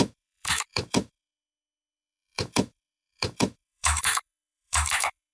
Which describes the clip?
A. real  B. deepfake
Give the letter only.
B